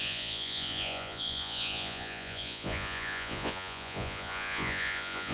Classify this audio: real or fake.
fake